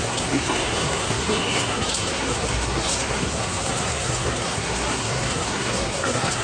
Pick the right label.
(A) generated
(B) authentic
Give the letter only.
A